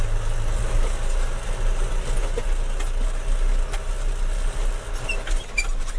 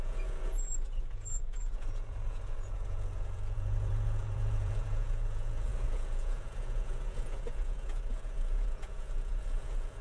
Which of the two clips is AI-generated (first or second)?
second